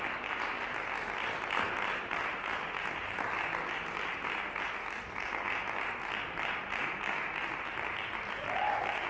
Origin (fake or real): real